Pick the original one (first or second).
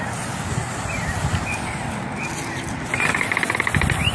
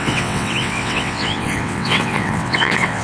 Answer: first